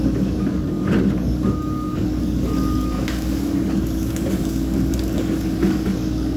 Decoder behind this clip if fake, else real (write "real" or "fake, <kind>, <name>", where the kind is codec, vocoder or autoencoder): fake, codec, DAC